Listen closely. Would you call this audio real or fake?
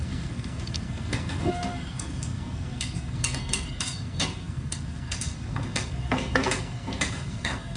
fake